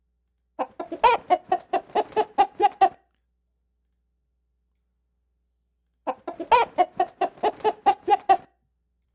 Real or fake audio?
real